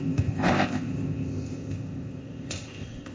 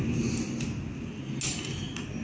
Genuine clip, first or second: second